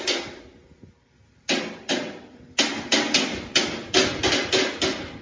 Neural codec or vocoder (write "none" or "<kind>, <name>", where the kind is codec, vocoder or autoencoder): none